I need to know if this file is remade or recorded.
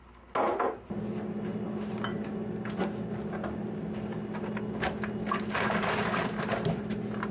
recorded